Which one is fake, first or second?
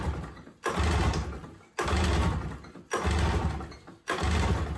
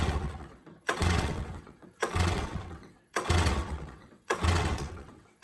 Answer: second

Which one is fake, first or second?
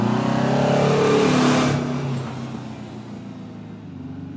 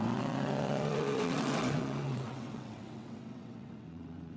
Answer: second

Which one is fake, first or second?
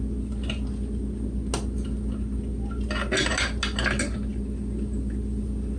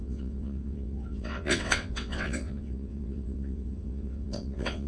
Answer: second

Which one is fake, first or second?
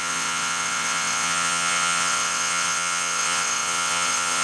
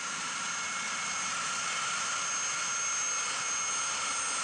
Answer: first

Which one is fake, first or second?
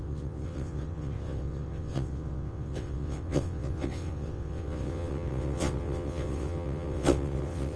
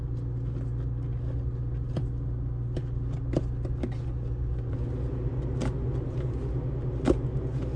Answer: first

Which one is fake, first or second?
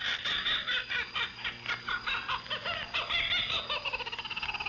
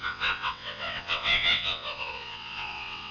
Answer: second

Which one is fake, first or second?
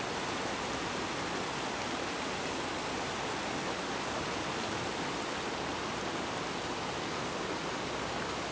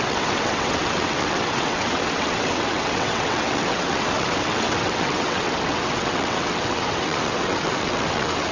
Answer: second